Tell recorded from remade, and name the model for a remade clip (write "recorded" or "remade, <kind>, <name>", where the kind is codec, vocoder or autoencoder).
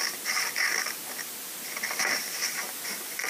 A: recorded